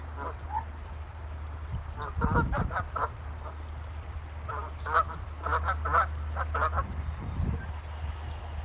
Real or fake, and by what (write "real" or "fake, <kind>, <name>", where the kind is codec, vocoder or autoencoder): real